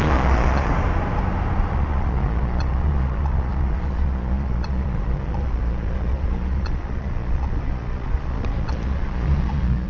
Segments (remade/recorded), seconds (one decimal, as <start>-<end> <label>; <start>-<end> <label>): 0.0-0.7 remade; 0.7-1.7 recorded; 1.7-9.9 remade